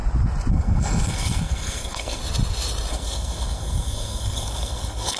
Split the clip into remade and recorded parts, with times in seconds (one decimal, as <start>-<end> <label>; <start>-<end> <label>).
0.0-0.5 recorded; 0.5-2.2 remade; 2.2-2.9 recorded; 2.9-5.2 remade